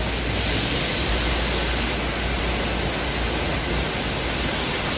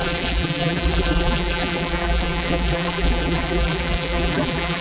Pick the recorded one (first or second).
first